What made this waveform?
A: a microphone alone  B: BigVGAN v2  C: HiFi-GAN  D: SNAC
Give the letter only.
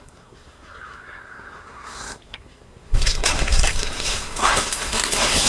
D